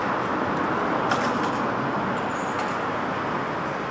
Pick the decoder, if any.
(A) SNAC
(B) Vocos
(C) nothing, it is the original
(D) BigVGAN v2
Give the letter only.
C